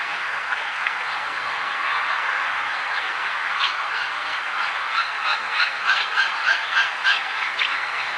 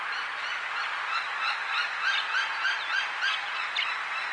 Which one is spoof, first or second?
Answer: first